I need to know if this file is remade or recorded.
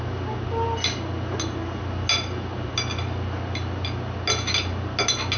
recorded